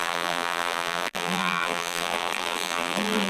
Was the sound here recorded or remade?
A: remade